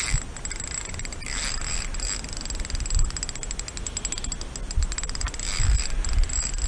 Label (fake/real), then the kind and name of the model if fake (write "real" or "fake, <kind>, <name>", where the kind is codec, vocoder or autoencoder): real